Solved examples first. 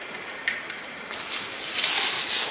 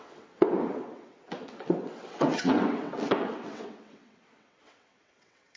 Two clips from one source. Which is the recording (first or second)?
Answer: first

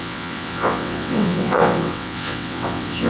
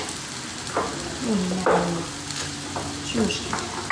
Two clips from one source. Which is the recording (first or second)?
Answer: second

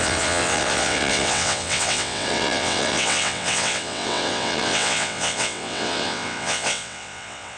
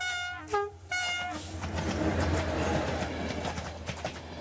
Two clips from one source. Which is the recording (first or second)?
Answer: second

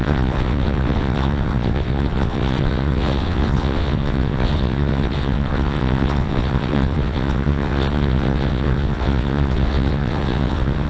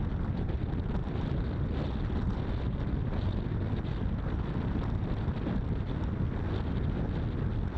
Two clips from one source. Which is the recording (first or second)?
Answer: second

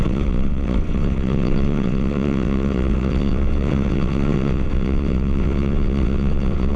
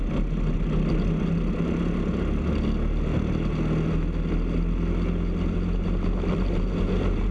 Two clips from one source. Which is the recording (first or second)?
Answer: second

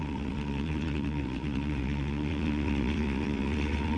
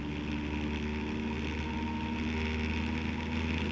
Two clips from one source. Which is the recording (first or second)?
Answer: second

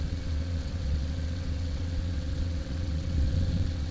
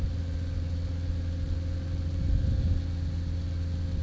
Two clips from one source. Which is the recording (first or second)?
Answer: second